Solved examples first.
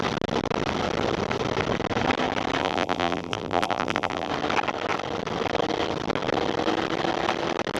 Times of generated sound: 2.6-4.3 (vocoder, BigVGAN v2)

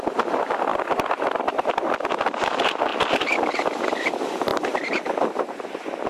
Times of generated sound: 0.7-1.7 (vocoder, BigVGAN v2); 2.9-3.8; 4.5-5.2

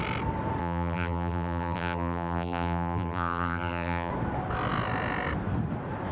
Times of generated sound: 0.6-4.1 (vocoder, BigVGAN v2)

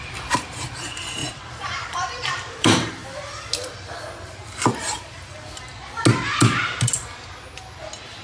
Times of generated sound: 0.0-3.0 (vocoder, BigVGAN v2)

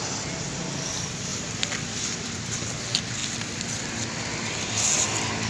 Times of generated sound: 1.3-2.7 (vocoder, BigVGAN v2); 3.2-3.9; 4.3-5.0

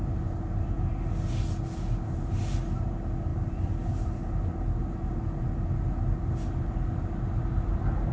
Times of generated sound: none